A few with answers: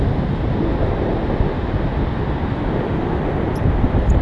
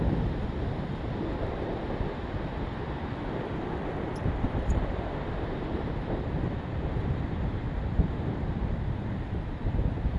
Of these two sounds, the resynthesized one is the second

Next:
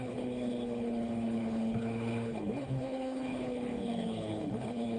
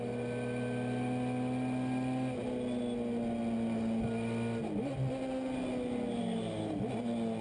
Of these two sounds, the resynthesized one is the first